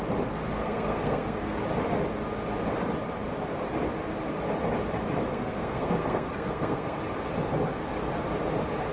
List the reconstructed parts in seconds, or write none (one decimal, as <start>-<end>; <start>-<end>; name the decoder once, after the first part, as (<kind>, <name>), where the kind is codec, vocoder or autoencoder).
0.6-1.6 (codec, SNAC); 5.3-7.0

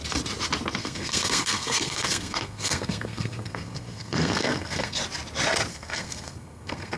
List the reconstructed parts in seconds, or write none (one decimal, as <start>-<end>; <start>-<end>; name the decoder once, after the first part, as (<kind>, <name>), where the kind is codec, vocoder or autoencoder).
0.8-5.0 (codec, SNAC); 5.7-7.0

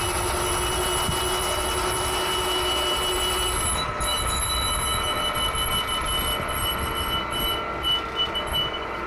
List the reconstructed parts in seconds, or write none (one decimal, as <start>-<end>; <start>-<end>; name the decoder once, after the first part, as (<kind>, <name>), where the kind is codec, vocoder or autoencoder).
none

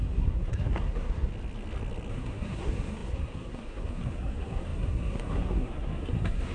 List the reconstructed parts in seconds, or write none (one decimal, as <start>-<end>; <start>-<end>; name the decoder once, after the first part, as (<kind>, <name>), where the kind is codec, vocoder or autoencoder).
0.0-1.3 (codec, SNAC); 2.1-6.5

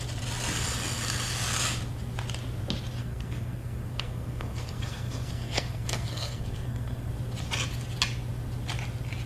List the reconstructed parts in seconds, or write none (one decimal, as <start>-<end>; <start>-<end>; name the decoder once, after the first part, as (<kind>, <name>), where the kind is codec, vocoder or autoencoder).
3.0-7.1 (codec, SNAC)

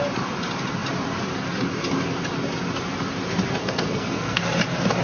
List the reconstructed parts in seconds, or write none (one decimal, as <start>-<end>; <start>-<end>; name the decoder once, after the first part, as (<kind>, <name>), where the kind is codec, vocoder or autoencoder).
3.6-4.4 (codec, SNAC)